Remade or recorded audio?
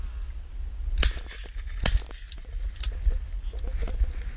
recorded